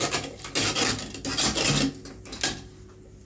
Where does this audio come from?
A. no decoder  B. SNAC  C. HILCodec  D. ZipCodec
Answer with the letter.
A